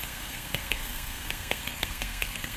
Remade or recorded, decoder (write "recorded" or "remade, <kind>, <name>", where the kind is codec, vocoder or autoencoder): remade, codec, SNAC